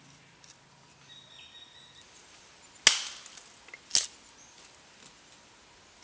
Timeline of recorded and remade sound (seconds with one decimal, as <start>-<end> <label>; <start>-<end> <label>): 0.0-6.0 recorded